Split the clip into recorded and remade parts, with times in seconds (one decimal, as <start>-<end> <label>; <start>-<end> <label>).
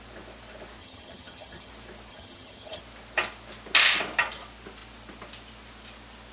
0.0-0.8 recorded; 0.8-1.7 remade; 1.7-2.1 recorded; 2.1-2.8 remade; 2.8-6.3 recorded